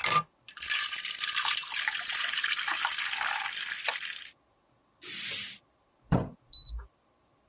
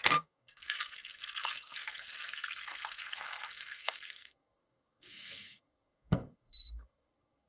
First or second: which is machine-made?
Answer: second